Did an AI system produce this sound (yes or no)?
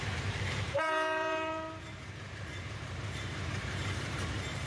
yes